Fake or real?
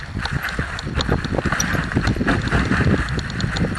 real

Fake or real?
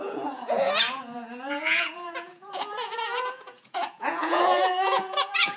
fake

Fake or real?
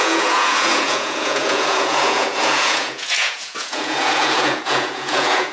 fake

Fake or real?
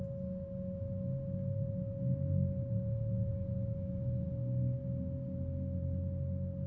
real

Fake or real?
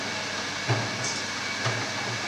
real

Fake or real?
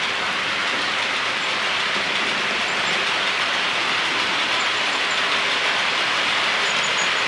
real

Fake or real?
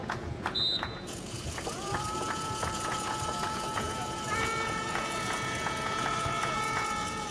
fake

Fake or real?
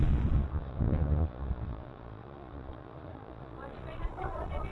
fake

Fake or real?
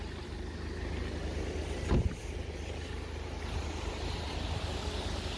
real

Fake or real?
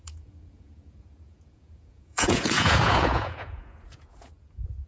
fake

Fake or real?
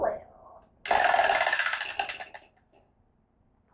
real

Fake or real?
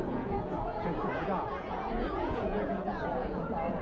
fake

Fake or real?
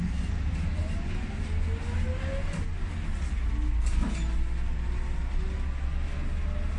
real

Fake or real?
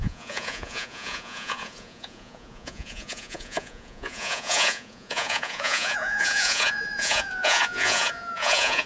fake